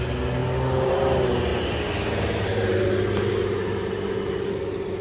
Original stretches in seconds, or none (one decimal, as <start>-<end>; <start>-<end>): 0.0-5.0